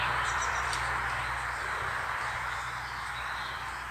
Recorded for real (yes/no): no